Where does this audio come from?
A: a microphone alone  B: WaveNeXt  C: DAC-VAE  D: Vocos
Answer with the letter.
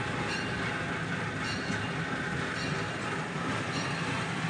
A